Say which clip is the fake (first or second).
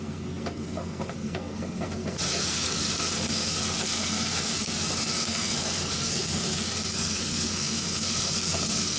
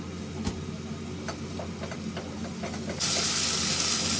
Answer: first